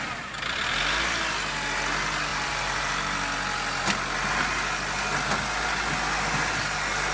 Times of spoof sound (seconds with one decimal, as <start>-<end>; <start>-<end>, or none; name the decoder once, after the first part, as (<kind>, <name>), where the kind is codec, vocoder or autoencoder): 2.3-2.9 (vocoder, BigVGAN v2)